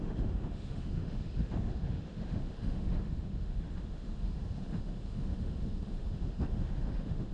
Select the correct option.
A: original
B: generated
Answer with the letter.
B